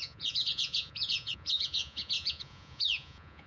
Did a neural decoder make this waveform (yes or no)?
yes